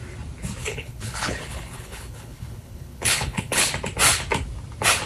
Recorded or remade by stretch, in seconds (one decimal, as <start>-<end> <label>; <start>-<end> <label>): 0.0-0.6 recorded; 0.6-3.7 remade; 3.7-5.1 recorded